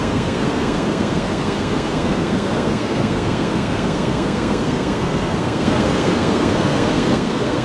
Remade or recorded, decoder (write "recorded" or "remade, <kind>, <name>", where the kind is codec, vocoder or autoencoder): remade, codec, SNAC